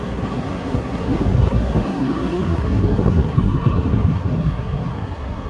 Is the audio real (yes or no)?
no